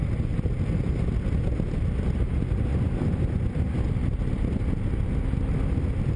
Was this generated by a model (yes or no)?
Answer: no